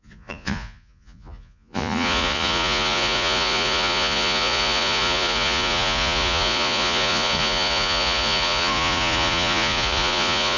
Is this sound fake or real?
fake